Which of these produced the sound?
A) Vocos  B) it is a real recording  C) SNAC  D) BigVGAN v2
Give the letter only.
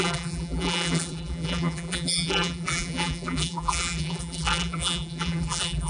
D